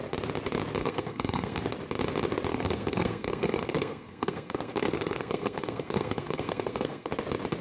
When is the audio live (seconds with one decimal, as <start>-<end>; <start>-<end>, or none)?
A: 0.0-0.8; 1.6-2.5; 7.1-7.6

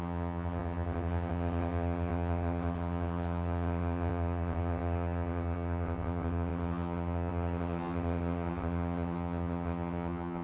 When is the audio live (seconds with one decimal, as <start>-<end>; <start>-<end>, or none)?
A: none

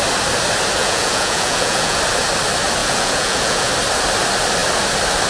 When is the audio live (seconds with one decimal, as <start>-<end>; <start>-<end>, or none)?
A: 0.0-0.8; 2.0-2.8; 3.7-5.3

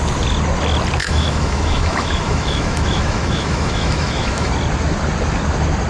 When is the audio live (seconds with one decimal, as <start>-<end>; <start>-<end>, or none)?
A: 0.0-1.0; 4.5-5.9